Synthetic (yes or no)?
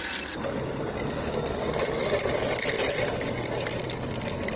no